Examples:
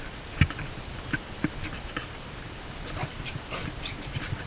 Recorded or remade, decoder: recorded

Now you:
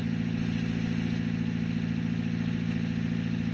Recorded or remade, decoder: recorded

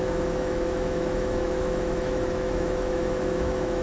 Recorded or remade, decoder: remade, autoencoder, DAC-VAE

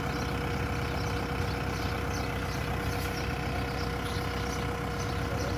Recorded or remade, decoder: recorded